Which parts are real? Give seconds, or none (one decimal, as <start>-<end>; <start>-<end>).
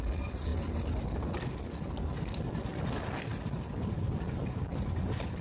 0.0-5.4